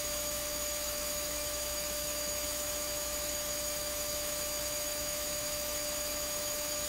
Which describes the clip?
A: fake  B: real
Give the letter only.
A